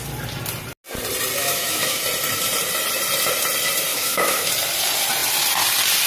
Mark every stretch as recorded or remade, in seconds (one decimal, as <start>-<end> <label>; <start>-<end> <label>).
0.0-1.4 recorded; 1.4-2.0 remade; 2.0-3.9 recorded; 3.9-4.5 remade; 4.5-6.1 recorded